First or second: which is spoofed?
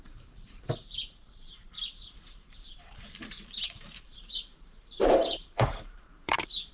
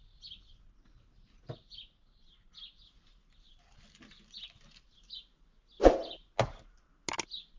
first